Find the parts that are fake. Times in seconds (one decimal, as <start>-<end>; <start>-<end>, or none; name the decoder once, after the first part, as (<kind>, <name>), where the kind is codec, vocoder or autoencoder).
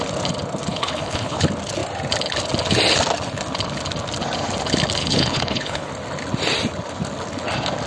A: 0.7-1.4 (codec, HILCodec); 5.0-5.9